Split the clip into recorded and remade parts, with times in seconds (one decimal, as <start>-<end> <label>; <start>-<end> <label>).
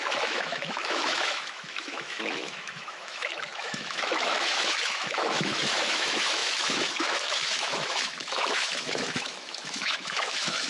0.0-10.7 remade